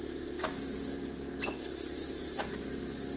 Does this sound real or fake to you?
fake